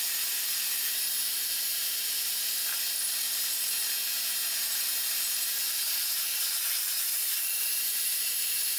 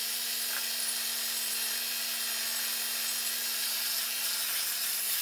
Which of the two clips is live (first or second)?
second